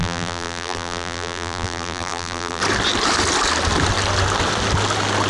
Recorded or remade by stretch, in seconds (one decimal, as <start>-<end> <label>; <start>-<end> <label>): 0.0-2.6 remade; 2.6-5.3 recorded